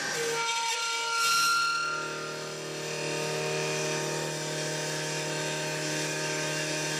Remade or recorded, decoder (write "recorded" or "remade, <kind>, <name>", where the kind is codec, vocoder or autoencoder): recorded